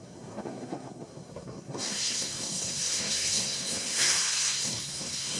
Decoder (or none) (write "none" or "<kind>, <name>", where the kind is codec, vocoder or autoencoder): codec, SNAC